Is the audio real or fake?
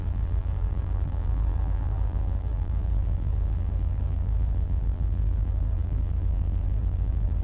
fake